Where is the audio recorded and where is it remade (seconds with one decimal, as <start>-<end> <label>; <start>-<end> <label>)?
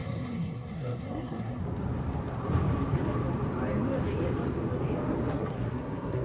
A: 0.0-1.6 remade; 1.6-5.3 recorded; 5.3-6.2 remade